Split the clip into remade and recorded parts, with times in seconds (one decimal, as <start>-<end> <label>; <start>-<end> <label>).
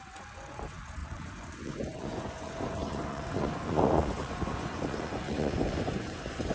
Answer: 0.0-6.5 remade